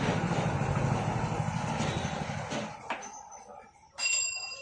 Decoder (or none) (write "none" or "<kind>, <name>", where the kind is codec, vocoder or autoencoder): none